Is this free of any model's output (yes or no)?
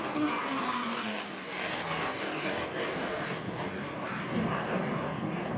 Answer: no